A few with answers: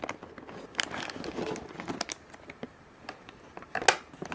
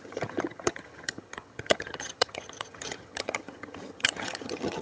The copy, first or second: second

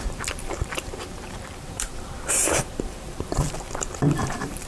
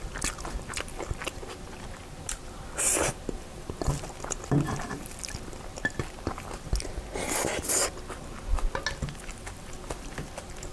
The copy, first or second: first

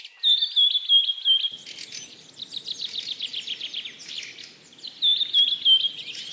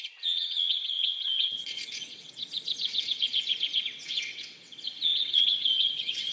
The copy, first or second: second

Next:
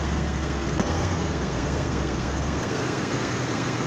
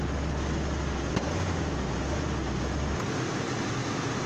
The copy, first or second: first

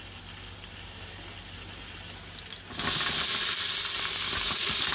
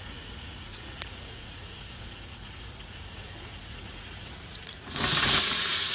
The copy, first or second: second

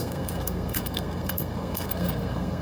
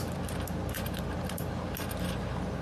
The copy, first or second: first